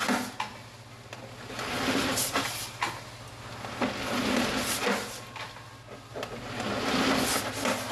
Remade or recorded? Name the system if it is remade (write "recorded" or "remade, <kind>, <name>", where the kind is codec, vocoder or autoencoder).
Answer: recorded